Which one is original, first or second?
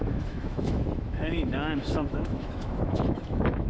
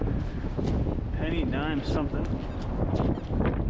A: second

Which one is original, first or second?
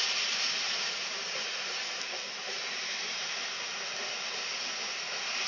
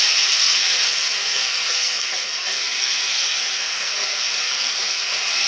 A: first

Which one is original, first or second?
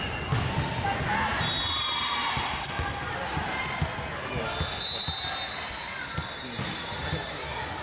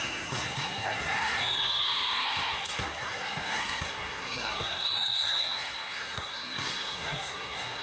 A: first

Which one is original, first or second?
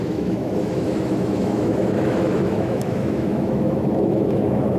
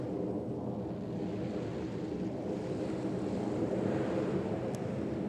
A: second